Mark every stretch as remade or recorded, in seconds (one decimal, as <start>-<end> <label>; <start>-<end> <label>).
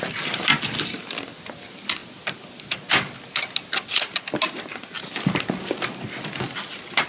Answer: 0.0-7.1 recorded